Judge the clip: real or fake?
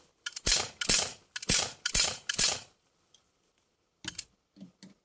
real